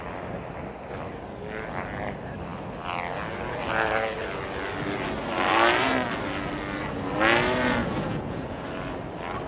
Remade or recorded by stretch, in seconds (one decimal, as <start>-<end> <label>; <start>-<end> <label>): 0.0-7.8 recorded; 7.8-8.6 remade; 8.6-9.5 recorded